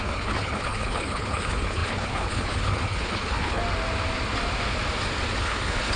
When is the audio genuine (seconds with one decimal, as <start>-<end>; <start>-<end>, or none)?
3.6-5.4